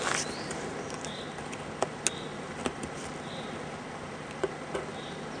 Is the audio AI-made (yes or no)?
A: no